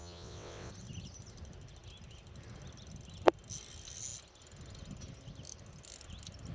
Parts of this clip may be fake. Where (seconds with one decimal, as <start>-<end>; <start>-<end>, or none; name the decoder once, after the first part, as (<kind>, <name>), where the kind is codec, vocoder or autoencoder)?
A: 0.0-0.7 (vocoder, WaveNeXt)